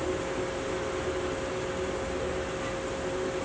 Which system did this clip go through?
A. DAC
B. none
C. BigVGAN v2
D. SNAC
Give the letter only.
B